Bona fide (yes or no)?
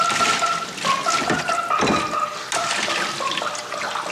yes